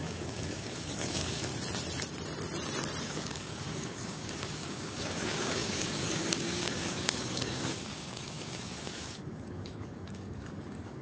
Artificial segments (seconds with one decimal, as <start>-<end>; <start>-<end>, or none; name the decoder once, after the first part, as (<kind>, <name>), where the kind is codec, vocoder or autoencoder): 0.0-1.5 (codec, DAC); 3.0-11.0